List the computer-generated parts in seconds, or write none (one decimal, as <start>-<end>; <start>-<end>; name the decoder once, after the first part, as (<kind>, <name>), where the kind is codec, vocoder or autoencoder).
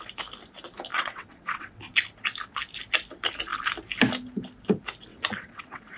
0.9-1.8 (vocoder, WaveNeXt); 5.1-6.0